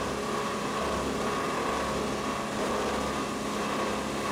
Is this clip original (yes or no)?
yes